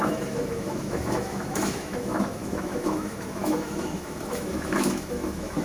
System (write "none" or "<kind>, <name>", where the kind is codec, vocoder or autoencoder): autoencoder, DAC-VAE